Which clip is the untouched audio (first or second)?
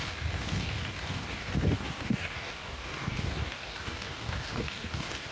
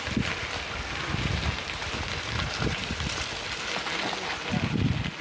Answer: second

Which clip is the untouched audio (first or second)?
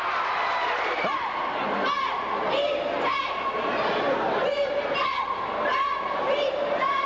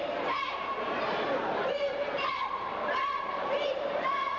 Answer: first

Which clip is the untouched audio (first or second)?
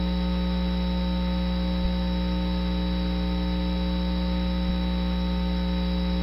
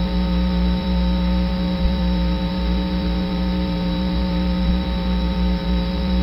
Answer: first